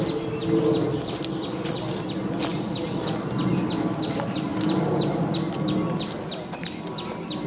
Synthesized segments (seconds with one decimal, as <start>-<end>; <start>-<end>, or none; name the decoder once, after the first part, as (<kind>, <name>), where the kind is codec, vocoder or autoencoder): none